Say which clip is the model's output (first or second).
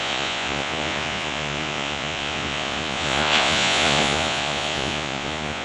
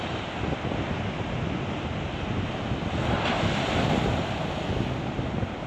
first